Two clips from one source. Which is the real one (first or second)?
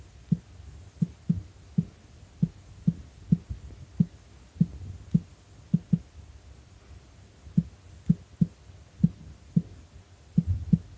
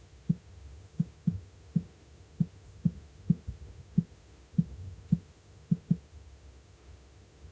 first